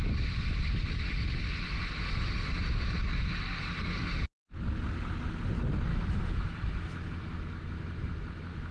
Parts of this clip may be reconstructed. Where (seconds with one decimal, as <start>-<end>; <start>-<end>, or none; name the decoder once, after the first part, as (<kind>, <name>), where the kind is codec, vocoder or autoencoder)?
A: 5.9-8.7 (autoencoder, DAC-VAE)

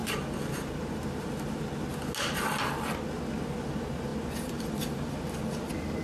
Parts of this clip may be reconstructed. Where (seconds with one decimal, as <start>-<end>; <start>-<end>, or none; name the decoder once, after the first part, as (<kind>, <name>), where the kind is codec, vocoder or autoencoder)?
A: none

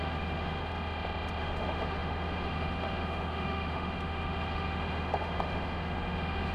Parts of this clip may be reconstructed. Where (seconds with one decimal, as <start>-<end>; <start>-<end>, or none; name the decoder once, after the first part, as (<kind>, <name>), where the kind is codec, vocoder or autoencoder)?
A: 0.0-0.7 (autoencoder, DAC-VAE); 1.4-6.5

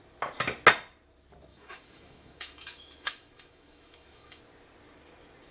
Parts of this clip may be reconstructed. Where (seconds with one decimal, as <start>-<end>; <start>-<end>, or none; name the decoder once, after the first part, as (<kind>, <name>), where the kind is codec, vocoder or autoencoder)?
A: 1.5-4.4 (autoencoder, DAC-VAE)

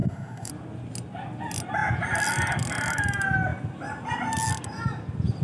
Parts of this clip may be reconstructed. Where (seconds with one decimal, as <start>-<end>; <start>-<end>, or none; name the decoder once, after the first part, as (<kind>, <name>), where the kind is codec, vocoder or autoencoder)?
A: 0.0-0.5 (autoencoder, DAC-VAE)

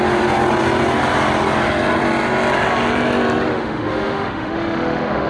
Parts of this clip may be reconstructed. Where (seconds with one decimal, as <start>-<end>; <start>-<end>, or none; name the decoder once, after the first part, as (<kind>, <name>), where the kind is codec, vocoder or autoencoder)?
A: 3.5-5.3 (autoencoder, DAC-VAE)

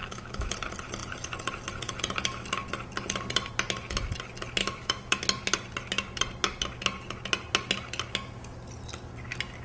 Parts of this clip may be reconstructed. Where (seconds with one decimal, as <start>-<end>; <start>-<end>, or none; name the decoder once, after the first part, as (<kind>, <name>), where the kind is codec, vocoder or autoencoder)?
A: 0.0-0.5 (autoencoder, DAC-VAE); 4.6-5.2

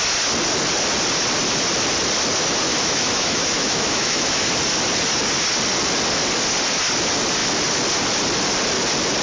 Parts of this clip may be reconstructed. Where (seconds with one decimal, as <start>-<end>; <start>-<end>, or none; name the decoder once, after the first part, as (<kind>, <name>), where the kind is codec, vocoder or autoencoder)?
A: 2.7-4.5 (autoencoder, DAC-VAE)